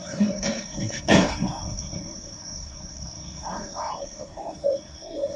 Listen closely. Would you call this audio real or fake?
fake